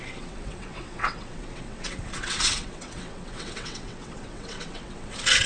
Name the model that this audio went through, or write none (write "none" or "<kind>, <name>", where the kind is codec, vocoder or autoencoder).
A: vocoder, WaveNeXt